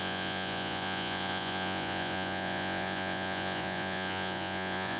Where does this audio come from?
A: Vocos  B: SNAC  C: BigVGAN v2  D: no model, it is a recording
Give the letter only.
A